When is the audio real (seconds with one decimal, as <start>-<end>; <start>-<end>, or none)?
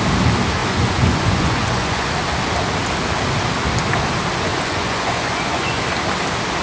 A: 0.0-0.6; 2.1-4.5; 5.8-6.6